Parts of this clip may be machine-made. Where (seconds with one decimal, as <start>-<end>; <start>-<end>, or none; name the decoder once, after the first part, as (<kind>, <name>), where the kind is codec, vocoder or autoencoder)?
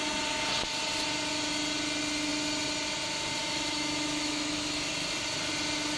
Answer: 3.4-4.9 (autoencoder, DAC-VAE)